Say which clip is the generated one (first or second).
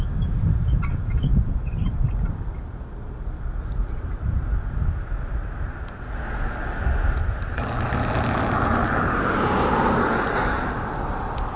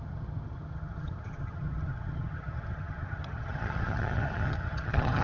second